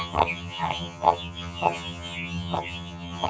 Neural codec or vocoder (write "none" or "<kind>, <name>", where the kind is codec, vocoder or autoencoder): vocoder, HiFi-GAN